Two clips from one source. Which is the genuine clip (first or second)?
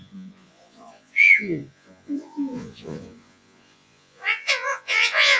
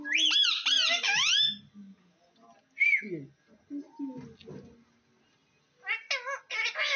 second